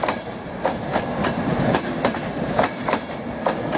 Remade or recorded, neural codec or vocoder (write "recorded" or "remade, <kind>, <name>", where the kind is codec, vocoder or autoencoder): remade, vocoder, BigVGAN v2